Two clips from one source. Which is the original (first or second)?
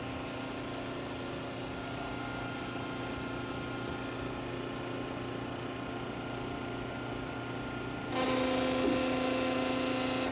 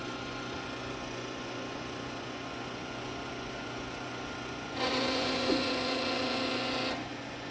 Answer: first